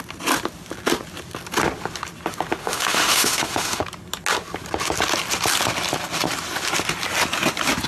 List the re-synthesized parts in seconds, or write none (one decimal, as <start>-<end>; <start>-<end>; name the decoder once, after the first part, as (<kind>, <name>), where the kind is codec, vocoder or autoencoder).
2.6-3.8 (autoencoder, DAC-VAE)